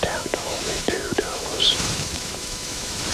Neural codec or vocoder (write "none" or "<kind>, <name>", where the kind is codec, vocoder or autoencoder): autoencoder, DAC-VAE